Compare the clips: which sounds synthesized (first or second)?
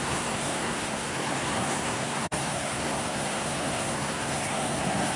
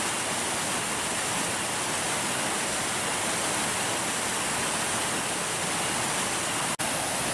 first